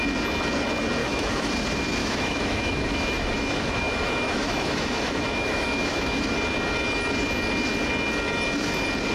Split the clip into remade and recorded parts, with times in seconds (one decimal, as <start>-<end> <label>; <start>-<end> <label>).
0.0-1.0 recorded; 1.0-1.5 remade; 1.5-2.0 recorded; 2.0-6.2 remade; 6.2-9.1 recorded